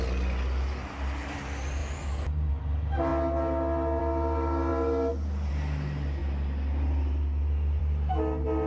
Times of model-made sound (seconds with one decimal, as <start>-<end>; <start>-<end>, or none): none

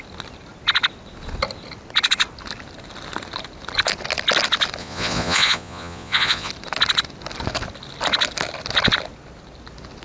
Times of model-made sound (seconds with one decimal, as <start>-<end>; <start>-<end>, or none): 4.8-6.5